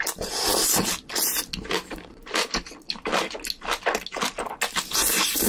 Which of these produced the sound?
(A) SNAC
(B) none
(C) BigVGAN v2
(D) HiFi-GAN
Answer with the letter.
B